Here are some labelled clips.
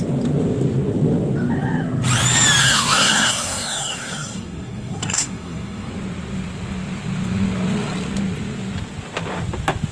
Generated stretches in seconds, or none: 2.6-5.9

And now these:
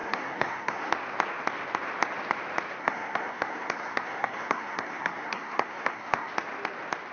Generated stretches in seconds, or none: 0.0-0.9; 2.8-6.3

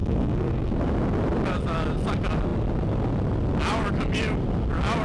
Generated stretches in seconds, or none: 0.0-0.7

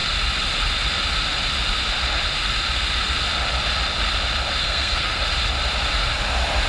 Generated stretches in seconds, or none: 4.6-5.2

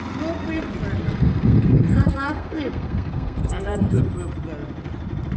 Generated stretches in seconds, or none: 1.0-4.0

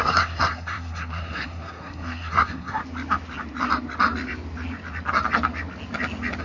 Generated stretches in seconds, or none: 0.0-2.8

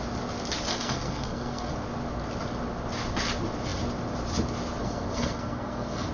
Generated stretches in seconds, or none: 0.7-1.7; 4.8-6.1

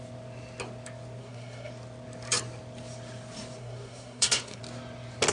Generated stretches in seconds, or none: 1.2-1.7; 3.6-4.6